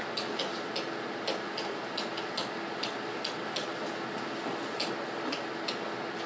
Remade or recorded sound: recorded